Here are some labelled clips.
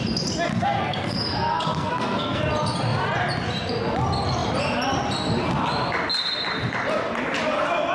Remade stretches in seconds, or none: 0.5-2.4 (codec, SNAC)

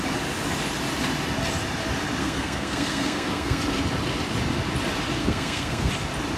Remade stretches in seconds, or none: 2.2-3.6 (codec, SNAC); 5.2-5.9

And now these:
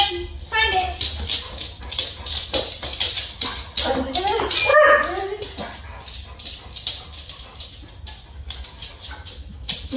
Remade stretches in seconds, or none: none